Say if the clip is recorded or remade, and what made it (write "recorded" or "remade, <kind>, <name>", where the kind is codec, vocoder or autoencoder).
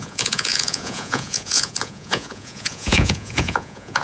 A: remade, vocoder, Vocos